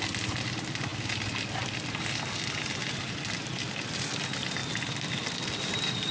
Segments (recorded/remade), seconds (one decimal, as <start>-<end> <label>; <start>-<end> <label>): 0.0-6.1 recorded